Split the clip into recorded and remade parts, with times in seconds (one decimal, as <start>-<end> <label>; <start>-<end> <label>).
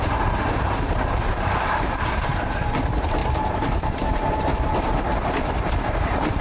0.0-6.4 remade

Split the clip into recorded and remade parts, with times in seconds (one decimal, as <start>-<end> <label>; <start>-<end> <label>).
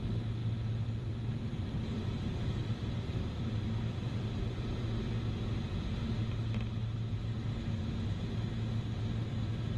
0.0-0.4 recorded; 0.4-5.3 remade; 5.3-9.8 recorded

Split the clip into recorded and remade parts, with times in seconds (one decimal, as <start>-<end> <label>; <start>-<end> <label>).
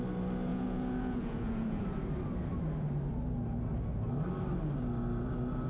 0.0-0.5 recorded; 0.5-1.8 remade; 1.8-5.7 recorded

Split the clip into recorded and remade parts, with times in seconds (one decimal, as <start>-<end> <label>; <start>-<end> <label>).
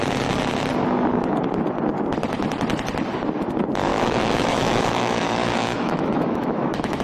0.0-3.9 recorded; 3.9-7.0 remade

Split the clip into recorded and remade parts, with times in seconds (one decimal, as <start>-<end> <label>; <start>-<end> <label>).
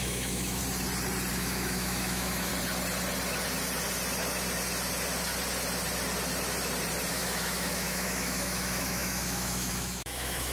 0.0-0.6 remade; 0.6-1.3 recorded; 1.3-2.5 remade; 2.5-7.1 recorded; 7.1-10.5 remade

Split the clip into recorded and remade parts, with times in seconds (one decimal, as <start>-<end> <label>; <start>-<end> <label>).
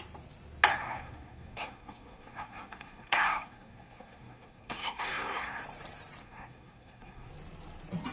0.0-0.7 recorded; 0.7-5.6 remade; 5.6-6.2 recorded; 6.2-7.3 remade; 7.3-8.1 recorded